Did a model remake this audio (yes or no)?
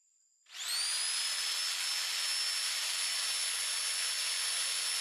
no